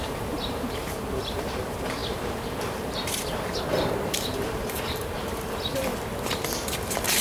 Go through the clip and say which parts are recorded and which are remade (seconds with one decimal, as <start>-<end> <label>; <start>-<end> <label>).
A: 0.0-5.9 remade; 5.9-6.5 recorded; 6.5-7.2 remade